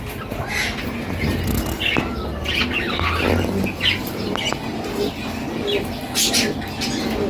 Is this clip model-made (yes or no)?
no